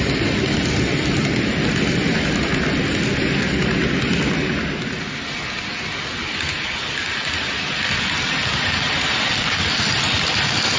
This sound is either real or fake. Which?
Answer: real